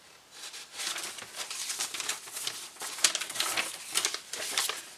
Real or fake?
real